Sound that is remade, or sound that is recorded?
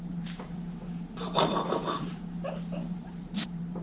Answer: remade